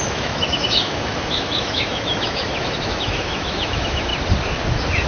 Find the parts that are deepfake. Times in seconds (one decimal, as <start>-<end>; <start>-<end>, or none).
0.0-4.1

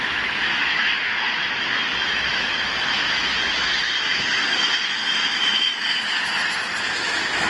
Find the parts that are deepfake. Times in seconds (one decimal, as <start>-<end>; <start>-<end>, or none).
0.0-7.5